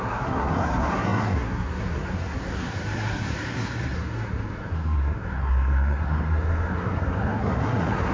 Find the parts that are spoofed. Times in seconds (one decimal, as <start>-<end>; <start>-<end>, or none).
0.0-8.1